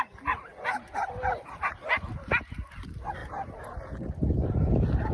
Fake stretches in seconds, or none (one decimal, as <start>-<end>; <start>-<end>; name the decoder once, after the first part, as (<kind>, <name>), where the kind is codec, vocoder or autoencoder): none